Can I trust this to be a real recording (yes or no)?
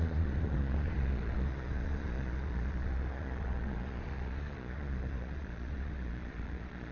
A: no